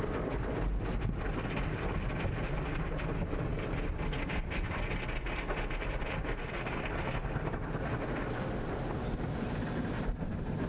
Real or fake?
real